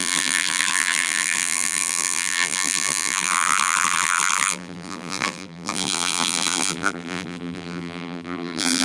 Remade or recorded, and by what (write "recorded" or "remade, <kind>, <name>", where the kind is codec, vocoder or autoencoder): remade, vocoder, BigVGAN v2